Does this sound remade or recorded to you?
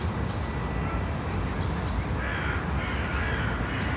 recorded